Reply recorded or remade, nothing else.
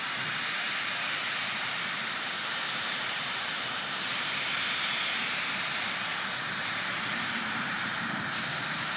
remade